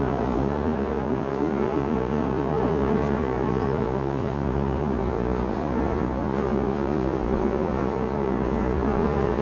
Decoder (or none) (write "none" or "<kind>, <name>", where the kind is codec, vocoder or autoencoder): vocoder, Vocos